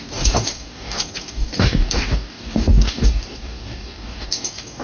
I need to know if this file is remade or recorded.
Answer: remade